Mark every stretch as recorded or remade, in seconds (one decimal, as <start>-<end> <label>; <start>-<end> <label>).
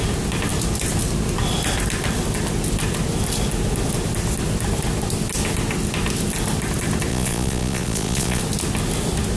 0.0-7.1 recorded; 7.1-8.4 remade; 8.4-9.4 recorded